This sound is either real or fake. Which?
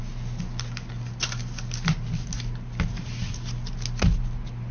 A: real